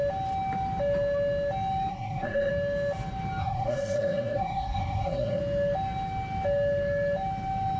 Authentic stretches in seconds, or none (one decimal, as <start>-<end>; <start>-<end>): 0.0-1.9; 2.5-3.4; 5.4-7.8